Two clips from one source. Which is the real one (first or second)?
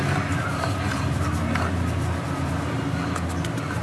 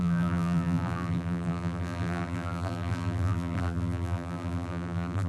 first